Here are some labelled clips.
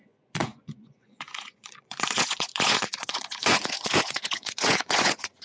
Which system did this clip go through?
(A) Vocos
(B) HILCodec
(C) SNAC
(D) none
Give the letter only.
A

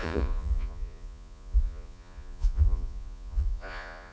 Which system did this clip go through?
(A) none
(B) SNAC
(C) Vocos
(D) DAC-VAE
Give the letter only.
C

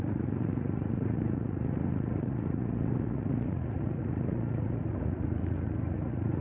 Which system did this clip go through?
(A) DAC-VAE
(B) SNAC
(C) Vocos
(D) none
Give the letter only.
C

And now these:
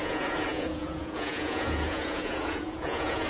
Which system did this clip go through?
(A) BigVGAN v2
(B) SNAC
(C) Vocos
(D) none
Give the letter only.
C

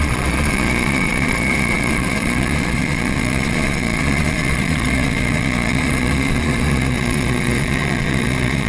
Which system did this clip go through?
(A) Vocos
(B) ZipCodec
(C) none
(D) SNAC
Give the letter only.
A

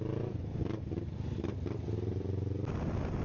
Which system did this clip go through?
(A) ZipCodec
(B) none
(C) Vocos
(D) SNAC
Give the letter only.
B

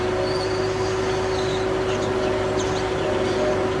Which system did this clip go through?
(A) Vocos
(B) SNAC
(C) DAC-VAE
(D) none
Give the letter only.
D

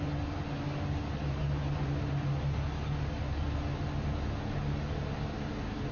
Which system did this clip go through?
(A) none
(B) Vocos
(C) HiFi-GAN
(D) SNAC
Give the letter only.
A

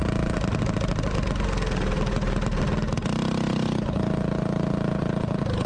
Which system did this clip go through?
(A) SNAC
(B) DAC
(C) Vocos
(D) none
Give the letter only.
D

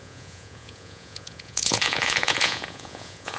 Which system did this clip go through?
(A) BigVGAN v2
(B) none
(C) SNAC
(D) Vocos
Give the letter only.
D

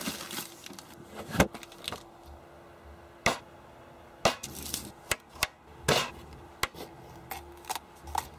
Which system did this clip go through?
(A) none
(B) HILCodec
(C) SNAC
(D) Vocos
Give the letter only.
A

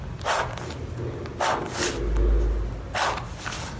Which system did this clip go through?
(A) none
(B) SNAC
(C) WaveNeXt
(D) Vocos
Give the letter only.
A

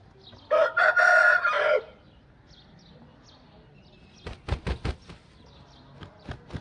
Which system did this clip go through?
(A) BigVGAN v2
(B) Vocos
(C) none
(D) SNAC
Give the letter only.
C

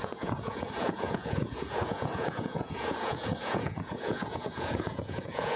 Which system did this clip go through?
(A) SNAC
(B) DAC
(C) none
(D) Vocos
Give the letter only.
D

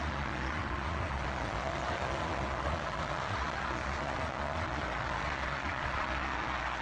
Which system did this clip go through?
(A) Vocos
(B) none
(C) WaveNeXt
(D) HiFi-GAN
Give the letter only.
A